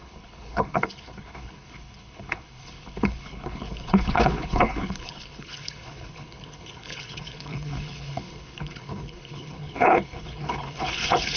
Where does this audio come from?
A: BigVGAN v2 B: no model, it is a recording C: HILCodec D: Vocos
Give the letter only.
C